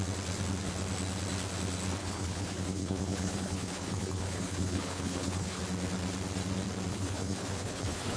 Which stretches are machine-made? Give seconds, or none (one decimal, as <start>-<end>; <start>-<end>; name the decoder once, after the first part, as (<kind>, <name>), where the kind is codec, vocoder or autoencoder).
2.0-5.6 (codec, HILCodec); 6.9-8.2